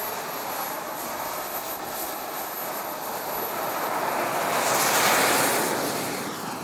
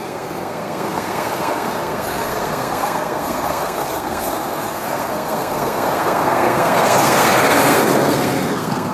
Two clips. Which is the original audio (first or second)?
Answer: first